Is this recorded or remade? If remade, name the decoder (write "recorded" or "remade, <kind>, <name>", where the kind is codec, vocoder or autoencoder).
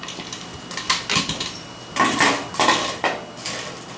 recorded